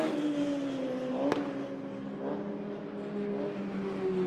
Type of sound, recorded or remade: recorded